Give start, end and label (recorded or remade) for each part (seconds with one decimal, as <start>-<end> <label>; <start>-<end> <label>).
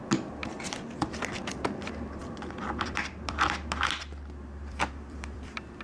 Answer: 0.0-0.4 remade; 0.4-1.2 recorded; 1.2-5.8 remade